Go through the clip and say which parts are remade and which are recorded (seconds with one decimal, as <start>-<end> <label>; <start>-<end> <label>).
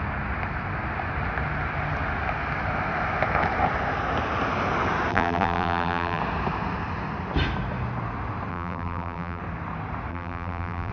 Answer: 0.0-5.1 recorded; 5.1-6.2 remade; 6.2-8.5 recorded; 8.5-9.4 remade; 9.4-10.1 recorded; 10.1-10.9 remade